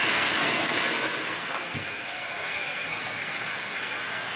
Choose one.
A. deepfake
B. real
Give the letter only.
A